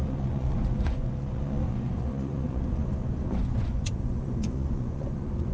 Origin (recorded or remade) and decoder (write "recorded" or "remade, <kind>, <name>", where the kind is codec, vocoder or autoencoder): remade, vocoder, Vocos